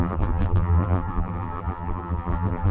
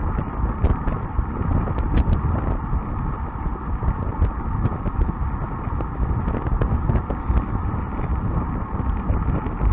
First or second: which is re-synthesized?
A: first